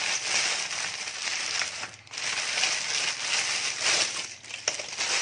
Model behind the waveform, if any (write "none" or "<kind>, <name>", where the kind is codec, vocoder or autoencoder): none